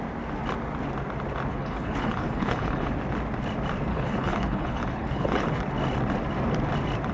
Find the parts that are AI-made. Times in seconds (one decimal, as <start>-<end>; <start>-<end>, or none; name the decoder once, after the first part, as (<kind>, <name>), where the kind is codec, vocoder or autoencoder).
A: 1.5-2.9 (codec, HILCodec); 3.9-5.6

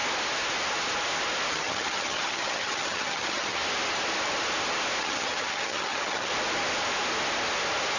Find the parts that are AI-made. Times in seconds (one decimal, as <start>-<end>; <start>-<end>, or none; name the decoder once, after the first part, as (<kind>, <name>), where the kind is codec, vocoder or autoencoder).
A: 1.5-3.6 (vocoder, HiFi-GAN); 5.0-6.3

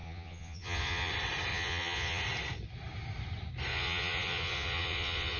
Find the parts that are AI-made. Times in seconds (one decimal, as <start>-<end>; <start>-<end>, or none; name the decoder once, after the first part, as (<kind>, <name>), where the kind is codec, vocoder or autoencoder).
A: 0.0-1.1 (vocoder, Vocos); 1.5-2.2; 3.7-5.4

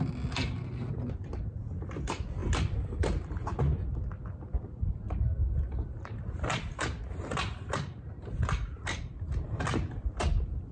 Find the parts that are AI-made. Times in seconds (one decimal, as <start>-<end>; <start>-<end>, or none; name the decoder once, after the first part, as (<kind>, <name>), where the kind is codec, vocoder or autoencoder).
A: none

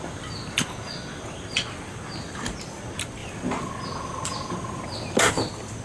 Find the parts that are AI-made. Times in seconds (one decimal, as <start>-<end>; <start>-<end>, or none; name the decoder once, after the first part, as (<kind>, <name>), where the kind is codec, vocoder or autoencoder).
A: none

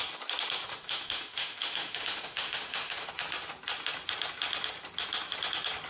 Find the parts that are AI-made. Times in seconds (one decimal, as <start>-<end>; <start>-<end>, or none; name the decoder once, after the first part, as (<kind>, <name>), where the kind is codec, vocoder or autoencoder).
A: 0.7-3.1 (autoencoder, DAC-VAE)

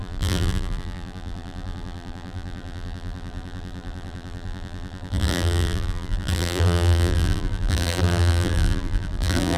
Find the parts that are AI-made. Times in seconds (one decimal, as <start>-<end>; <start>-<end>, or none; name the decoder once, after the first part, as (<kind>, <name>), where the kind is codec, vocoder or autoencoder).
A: 0.0-9.6 (vocoder, BigVGAN v2)